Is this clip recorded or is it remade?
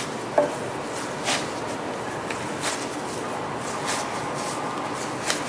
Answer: recorded